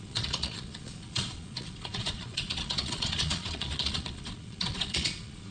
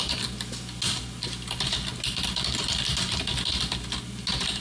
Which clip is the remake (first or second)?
first